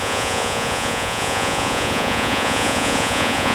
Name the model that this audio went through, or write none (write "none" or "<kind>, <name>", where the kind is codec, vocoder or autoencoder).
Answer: vocoder, Vocos